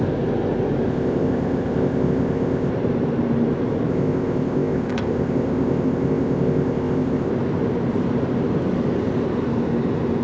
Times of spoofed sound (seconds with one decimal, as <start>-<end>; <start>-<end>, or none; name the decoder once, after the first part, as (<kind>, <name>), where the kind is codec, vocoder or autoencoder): 0.9-2.7 (codec, ZipCodec); 3.9-7.3